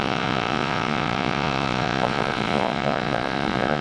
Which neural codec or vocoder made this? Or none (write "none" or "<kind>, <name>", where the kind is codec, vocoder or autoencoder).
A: vocoder, Vocos